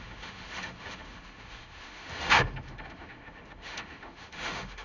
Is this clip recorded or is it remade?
remade